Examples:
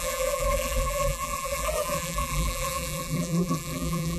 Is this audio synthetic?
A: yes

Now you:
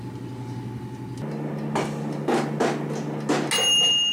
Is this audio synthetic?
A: no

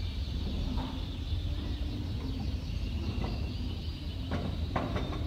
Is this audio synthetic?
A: no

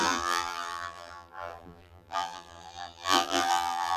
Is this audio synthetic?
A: yes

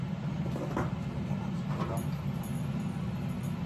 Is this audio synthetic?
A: no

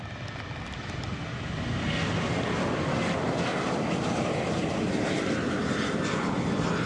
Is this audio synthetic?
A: no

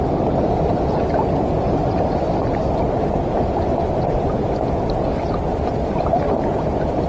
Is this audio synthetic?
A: no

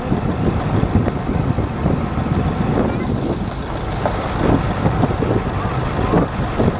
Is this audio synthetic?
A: no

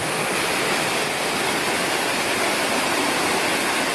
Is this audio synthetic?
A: yes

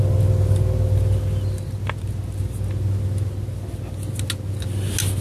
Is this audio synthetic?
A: no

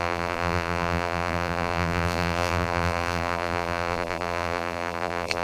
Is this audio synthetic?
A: yes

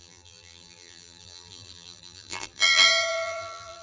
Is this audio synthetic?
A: yes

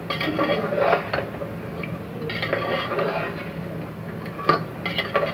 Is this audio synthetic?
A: no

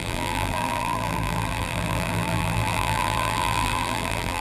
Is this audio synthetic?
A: yes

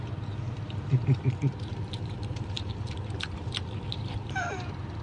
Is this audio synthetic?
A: yes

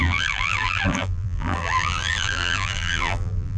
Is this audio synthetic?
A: yes